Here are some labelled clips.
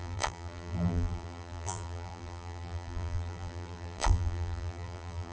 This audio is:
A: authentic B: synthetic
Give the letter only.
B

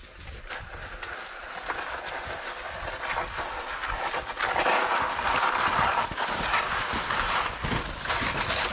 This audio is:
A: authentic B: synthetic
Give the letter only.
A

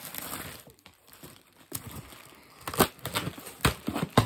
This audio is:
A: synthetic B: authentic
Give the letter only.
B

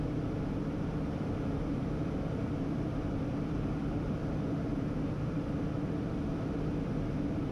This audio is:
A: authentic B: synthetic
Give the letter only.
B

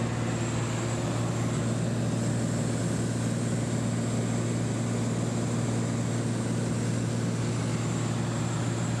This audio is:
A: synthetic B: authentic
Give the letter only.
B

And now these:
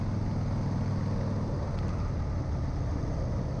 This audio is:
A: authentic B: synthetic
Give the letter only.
A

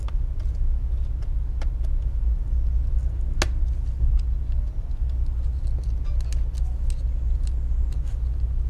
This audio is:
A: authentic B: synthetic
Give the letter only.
A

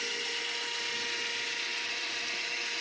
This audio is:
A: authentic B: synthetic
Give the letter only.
A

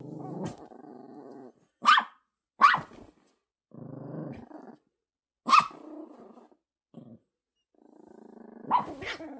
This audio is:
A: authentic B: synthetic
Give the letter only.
A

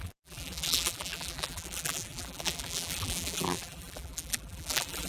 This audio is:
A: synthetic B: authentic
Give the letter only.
A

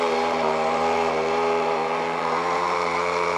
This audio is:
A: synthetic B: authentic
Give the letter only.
A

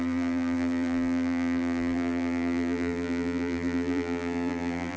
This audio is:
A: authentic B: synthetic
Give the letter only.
B